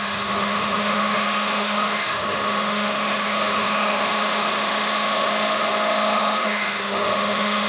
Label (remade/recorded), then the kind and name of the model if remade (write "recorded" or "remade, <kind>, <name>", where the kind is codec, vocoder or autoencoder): remade, autoencoder, DAC-VAE